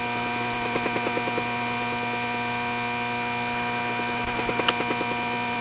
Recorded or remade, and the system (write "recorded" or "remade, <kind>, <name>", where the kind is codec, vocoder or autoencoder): recorded